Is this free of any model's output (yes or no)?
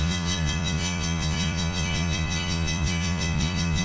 no